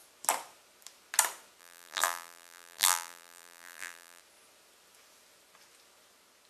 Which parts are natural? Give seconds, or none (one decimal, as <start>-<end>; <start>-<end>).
0.0-1.6; 4.2-6.5